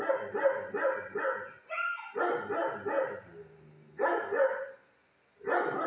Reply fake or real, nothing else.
real